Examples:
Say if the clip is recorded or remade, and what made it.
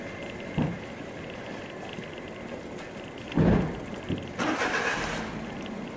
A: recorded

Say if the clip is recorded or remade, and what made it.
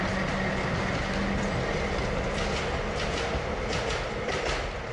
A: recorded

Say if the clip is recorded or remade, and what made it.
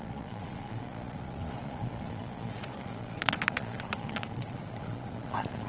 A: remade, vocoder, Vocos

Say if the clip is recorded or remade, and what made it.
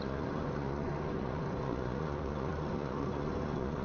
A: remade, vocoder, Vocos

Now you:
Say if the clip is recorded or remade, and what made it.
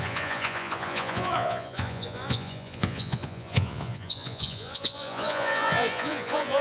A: remade, vocoder, Vocos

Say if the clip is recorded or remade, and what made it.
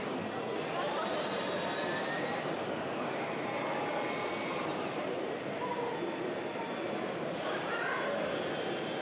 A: recorded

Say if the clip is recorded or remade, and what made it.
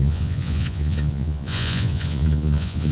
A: remade, vocoder, Vocos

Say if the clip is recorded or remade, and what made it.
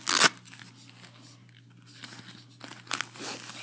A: recorded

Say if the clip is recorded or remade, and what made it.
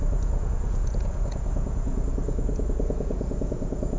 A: remade, vocoder, Vocos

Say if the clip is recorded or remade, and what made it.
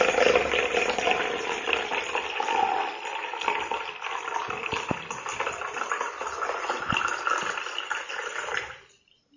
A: recorded